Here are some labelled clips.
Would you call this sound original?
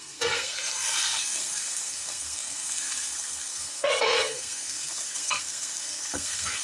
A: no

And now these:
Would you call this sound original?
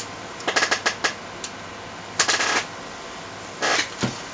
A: yes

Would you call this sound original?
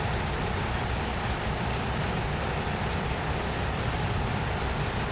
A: yes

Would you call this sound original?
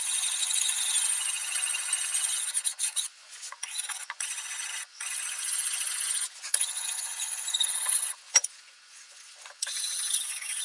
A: no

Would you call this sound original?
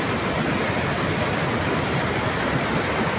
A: yes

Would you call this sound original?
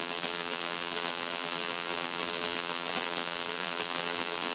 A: no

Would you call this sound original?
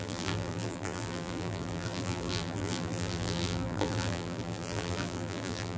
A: no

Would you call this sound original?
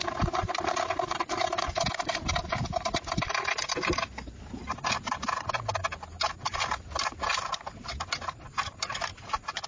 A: yes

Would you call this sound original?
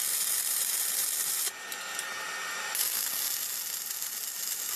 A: yes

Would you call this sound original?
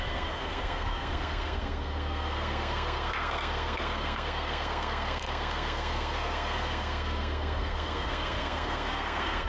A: no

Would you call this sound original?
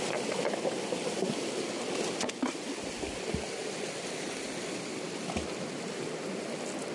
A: yes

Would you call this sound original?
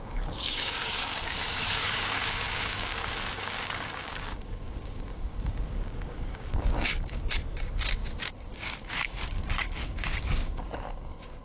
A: no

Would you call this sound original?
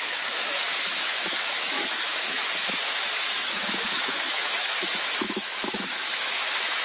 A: no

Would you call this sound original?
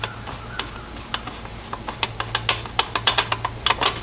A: yes